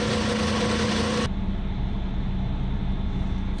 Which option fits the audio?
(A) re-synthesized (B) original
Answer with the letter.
B